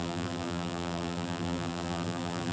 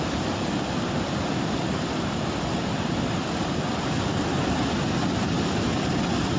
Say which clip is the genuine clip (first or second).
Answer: second